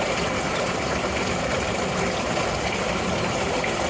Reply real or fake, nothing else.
real